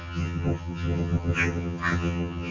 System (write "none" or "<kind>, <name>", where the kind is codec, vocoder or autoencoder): vocoder, HiFi-GAN